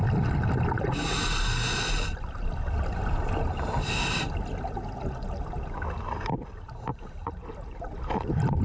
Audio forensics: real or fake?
real